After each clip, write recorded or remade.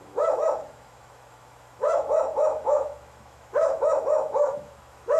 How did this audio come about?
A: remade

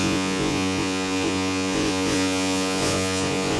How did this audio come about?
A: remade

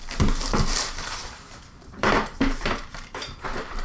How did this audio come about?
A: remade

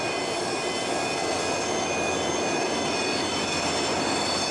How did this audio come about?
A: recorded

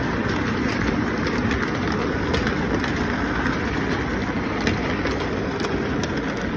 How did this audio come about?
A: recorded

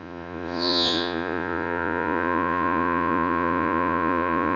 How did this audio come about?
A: remade